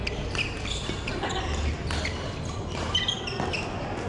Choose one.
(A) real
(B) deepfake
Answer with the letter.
A